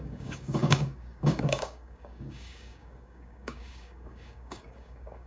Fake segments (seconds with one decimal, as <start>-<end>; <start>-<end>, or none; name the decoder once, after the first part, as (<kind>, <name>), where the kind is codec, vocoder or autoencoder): 0.0-5.3 (codec, DAC)

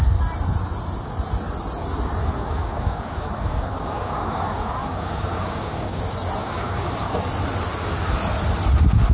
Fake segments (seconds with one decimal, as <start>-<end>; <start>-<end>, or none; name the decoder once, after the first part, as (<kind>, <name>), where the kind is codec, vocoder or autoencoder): 2.2-6.0 (codec, DAC); 6.4-7.2

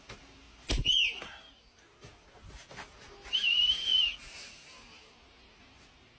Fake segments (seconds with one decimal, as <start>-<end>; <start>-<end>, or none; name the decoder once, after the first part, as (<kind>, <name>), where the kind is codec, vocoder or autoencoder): none

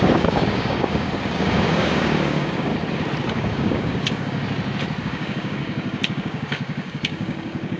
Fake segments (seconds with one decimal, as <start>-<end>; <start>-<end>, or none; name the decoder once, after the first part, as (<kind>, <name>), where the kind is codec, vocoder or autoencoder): 0.0-2.7 (codec, DAC); 3.3-4.4; 5.0-7.8

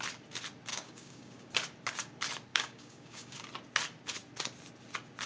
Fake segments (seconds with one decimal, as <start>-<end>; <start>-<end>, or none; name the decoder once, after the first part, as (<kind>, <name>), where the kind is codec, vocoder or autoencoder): 0.7-1.5 (codec, DAC); 2.5-3.4